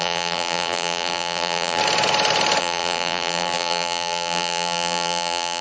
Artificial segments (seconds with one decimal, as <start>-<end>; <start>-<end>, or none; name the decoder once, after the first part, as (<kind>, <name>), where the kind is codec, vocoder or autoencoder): 0.0-1.8 (vocoder, BigVGAN v2); 2.6-5.6